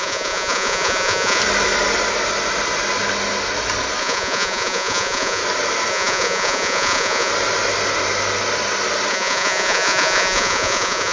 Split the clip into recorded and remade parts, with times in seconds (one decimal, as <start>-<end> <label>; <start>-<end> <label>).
0.0-1.4 remade; 1.4-4.0 recorded; 4.0-5.4 remade; 5.4-5.9 recorded; 5.9-7.3 remade; 7.3-9.1 recorded; 9.1-11.1 remade